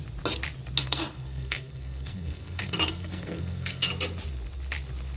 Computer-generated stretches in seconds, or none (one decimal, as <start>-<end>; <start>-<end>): 0.8-3.9